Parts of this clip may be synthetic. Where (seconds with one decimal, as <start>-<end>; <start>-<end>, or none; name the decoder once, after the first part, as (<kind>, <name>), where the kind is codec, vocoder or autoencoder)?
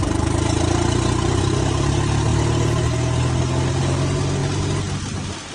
none